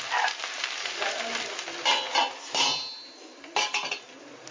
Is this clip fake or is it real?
real